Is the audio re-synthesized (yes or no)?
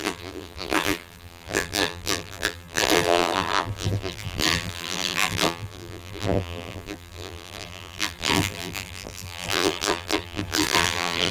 yes